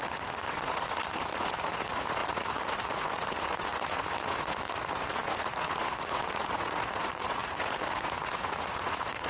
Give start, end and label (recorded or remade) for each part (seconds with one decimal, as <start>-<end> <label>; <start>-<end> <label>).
0.0-9.3 remade